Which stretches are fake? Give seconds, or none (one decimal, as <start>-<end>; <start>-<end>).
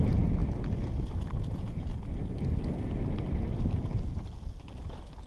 0.0-0.4; 1.5-1.9